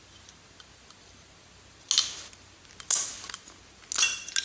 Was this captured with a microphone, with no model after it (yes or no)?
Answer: yes